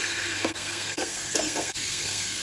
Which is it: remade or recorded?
remade